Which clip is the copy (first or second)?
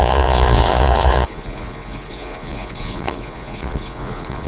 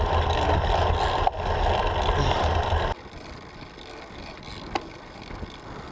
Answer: first